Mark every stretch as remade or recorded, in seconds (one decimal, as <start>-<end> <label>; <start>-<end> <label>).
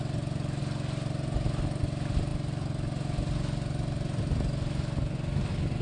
0.0-5.8 recorded